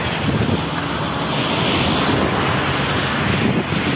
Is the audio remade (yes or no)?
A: no